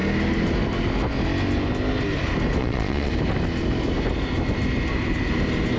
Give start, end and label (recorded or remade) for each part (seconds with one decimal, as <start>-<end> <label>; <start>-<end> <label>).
0.0-2.6 recorded; 2.6-3.1 remade; 3.1-5.8 recorded